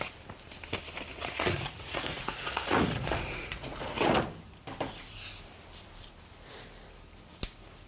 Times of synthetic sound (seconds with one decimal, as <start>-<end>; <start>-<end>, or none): 1.1-4.2